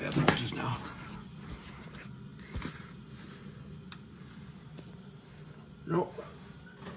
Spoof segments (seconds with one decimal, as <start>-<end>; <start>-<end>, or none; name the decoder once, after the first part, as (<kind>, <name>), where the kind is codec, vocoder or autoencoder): none